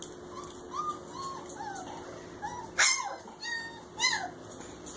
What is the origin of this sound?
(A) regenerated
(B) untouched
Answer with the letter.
B